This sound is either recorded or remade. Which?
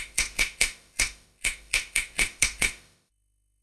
remade